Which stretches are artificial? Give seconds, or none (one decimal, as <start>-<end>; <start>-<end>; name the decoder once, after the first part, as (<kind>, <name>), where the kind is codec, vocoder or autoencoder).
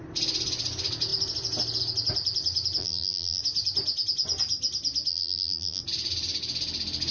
2.8-3.4 (vocoder, BigVGAN v2); 5.1-5.8